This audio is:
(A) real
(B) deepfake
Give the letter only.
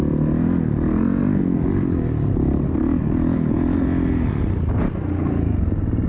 A